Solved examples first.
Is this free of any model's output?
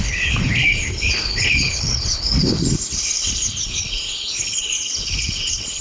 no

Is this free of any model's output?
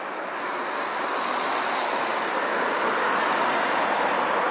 yes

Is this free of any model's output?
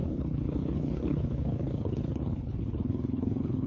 no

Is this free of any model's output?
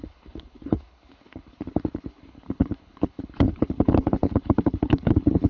no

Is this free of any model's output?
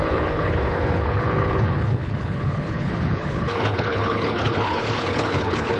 no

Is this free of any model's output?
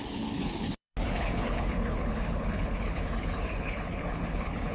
no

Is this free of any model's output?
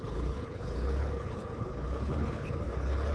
no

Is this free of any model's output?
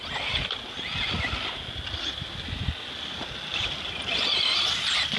yes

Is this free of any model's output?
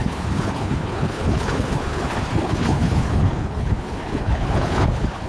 no